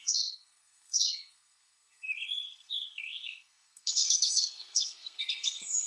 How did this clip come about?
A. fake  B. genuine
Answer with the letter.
A